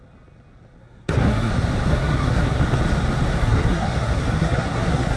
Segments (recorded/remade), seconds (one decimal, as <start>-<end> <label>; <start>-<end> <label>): 0.0-0.8 recorded; 0.8-1.5 remade; 1.5-1.9 recorded; 1.9-2.6 remade; 2.6-3.4 recorded; 3.4-5.2 remade